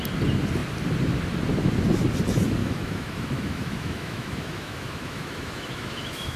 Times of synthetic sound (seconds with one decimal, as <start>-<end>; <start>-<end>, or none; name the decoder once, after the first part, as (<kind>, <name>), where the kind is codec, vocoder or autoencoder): 2.6-6.4 (autoencoder, DAC-VAE)